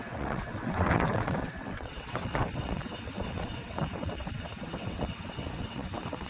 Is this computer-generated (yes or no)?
yes